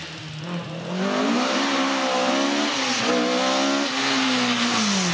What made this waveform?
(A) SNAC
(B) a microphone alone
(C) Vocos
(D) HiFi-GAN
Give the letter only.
B